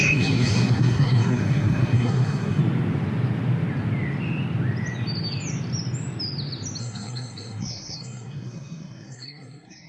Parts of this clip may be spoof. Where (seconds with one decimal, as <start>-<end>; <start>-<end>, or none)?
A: 0.0-2.6; 6.8-9.9